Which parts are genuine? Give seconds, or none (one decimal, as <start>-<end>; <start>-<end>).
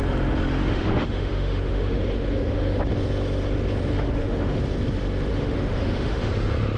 0.0-0.6; 2.8-3.9; 4.6-5.3; 6.3-6.8